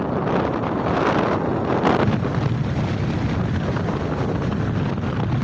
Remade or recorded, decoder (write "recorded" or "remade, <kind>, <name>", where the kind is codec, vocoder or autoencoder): recorded